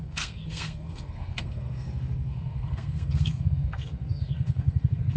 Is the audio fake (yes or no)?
yes